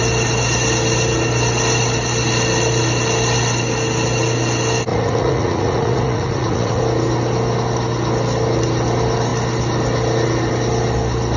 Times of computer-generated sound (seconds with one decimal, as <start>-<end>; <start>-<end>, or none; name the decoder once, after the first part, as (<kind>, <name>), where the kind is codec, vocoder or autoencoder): 4.9-6.8 (vocoder, Vocos)

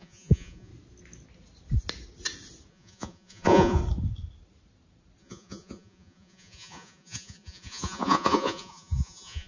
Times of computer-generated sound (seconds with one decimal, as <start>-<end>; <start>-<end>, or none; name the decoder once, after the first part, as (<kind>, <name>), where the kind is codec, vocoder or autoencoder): 0.0-0.7 (vocoder, Vocos); 2.7-3.8; 5.2-9.5